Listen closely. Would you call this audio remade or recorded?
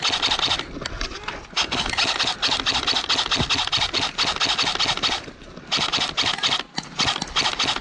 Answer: recorded